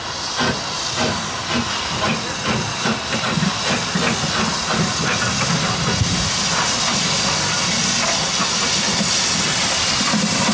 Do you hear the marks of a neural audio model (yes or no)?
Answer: no